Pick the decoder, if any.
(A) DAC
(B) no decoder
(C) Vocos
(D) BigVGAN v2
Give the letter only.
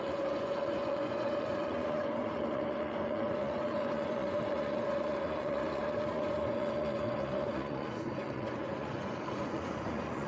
C